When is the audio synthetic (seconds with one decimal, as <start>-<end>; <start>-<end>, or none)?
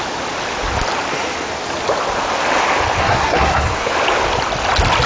3.0-3.9